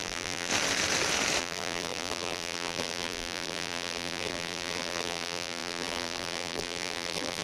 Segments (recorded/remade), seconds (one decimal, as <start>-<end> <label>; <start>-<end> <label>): 0.0-0.5 remade; 0.5-1.4 recorded; 1.4-7.4 remade

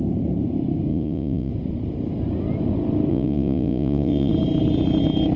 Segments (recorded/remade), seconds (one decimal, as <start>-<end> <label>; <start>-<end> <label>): 0.0-0.9 recorded; 0.9-1.5 remade; 1.5-3.1 recorded; 3.1-4.3 remade; 4.3-5.4 recorded

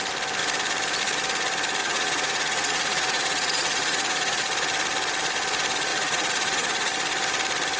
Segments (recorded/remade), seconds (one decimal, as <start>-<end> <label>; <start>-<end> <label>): 0.0-1.8 recorded; 1.8-4.4 remade; 4.4-5.9 recorded; 5.9-6.9 remade; 6.9-7.8 recorded

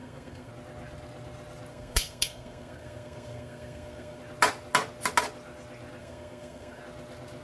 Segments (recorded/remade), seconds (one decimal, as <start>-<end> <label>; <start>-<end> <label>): 0.0-0.5 remade; 0.5-1.7 recorded; 1.7-4.2 remade; 4.2-6.0 recorded; 6.0-6.8 remade; 6.8-7.4 recorded

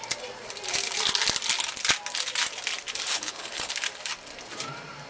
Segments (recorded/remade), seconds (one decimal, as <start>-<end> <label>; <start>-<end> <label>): 0.0-3.1 recorded; 3.1-3.7 remade; 3.7-5.1 recorded

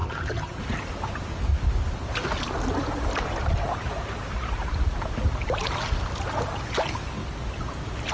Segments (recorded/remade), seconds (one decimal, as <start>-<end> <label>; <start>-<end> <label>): 0.0-0.6 remade; 0.6-8.1 recorded